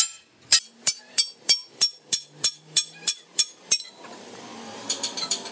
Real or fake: fake